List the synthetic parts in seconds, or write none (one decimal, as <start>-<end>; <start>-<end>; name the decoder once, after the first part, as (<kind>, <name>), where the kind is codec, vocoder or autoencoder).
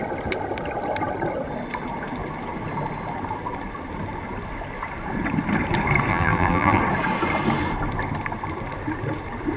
6.1-6.8 (vocoder, BigVGAN v2)